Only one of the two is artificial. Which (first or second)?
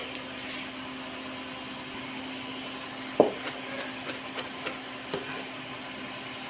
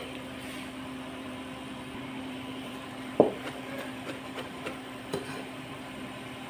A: second